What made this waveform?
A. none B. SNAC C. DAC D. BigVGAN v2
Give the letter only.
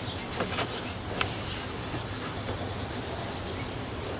A